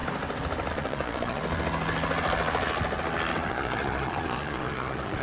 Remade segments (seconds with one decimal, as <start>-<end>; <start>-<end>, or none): 0.7-1.4; 3.5-5.2